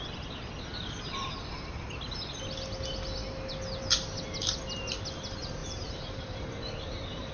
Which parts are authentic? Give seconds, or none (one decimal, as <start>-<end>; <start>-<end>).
0.0-0.7; 1.4-5.6